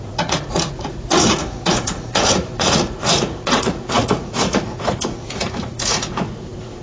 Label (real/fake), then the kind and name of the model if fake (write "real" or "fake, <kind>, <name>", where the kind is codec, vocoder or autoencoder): fake, vocoder, Vocos